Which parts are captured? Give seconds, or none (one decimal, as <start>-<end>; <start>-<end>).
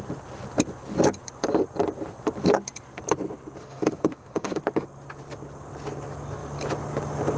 0.0-3.6; 4.6-7.4